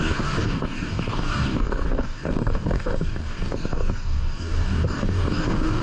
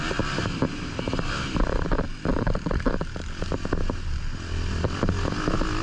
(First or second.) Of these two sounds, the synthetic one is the first